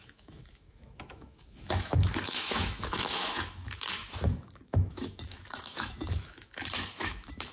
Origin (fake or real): fake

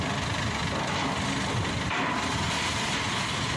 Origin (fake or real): real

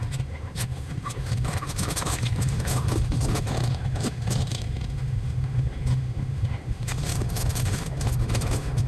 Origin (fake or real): fake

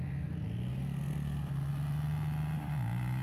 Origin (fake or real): real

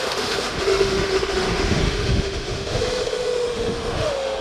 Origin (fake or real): fake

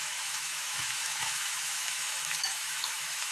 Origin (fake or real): fake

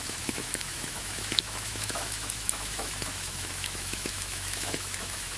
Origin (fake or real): fake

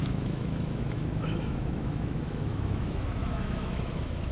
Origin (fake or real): fake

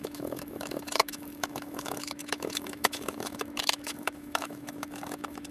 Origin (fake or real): fake